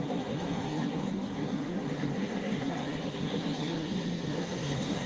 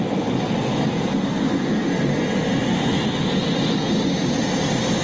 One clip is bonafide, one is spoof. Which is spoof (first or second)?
first